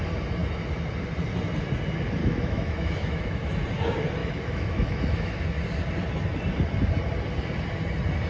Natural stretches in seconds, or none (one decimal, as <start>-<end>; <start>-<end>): 0.0-2.2; 3.5-4.2; 5.4-8.3